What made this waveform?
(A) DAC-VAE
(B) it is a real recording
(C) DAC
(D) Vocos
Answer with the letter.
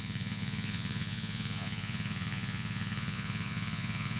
D